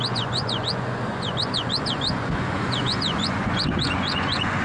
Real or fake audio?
fake